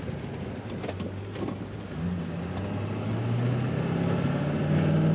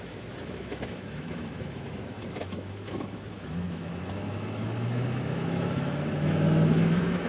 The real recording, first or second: first